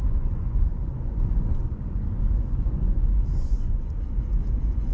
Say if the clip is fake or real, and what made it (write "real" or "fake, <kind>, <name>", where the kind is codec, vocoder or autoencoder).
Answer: fake, vocoder, Vocos